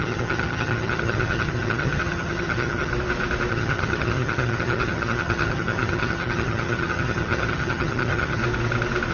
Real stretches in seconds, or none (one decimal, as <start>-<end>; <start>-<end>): 2.9-3.5; 8.4-9.1